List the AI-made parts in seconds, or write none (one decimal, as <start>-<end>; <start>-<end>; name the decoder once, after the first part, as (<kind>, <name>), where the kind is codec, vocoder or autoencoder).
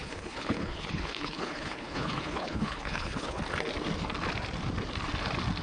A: 0.0-3.4 (codec, HILCodec)